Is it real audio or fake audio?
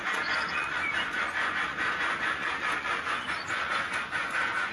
fake